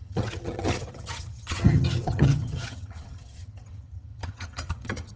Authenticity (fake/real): fake